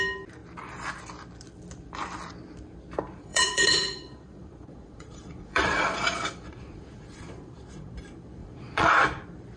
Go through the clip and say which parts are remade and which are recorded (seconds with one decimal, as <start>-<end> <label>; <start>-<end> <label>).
0.0-3.1 recorded; 3.1-7.9 remade; 7.9-8.4 recorded; 8.4-8.9 remade; 8.9-9.6 recorded